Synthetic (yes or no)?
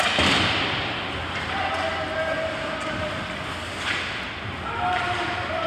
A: no